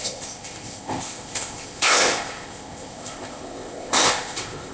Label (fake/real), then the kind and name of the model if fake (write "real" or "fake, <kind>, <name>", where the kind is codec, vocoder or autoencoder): fake, codec, ZipCodec